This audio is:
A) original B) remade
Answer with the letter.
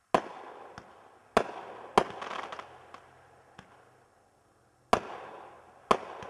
A